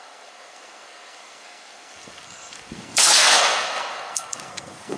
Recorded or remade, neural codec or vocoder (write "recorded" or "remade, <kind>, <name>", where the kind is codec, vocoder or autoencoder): remade, codec, SNAC